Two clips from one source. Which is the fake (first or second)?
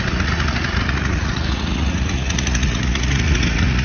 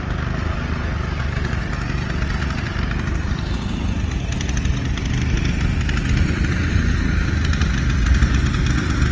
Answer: first